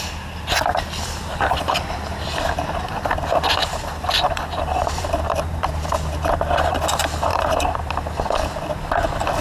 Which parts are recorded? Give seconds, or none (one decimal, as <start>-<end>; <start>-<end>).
0.0-1.3; 2.2-3.6; 6.8-7.3; 7.9-9.4